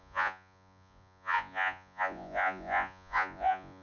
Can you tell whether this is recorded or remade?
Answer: remade